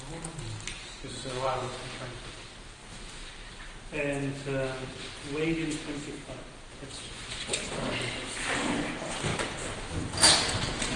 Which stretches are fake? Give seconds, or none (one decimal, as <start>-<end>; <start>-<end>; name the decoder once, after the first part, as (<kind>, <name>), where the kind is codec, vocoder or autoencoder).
0.7-1.6 (vocoder, Vocos); 6.7-7.7